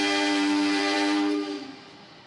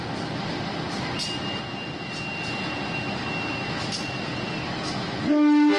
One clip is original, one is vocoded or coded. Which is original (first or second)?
second